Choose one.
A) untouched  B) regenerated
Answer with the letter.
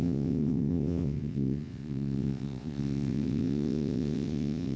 B